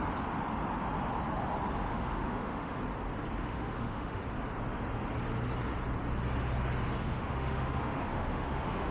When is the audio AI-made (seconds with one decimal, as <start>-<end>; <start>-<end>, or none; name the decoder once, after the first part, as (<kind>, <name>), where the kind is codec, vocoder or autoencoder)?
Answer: 1.9-2.8 (autoencoder, DAC-VAE); 3.4-4.2; 7.0-8.9